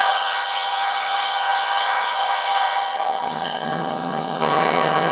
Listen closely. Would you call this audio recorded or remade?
remade